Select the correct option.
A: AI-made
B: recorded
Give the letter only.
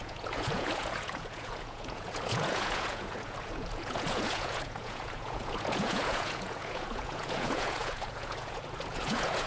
A